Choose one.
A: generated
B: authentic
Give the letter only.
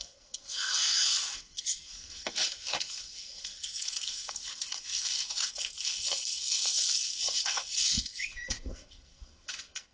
A